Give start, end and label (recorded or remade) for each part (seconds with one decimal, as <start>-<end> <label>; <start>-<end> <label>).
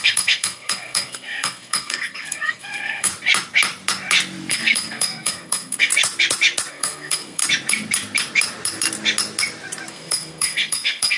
0.0-3.1 remade; 3.1-4.5 recorded; 4.5-5.9 remade; 5.9-6.7 recorded; 6.7-7.4 remade; 7.4-9.9 recorded; 9.9-11.2 remade